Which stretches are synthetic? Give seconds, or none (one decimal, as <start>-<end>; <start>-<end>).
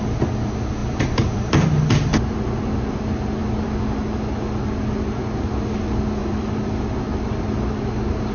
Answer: 0.8-2.2; 6.2-6.9